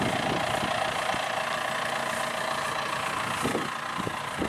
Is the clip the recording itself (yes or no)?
yes